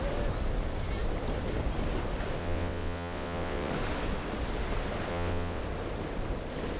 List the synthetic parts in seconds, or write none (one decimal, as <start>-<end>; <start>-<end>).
2.4-3.7; 5.1-5.6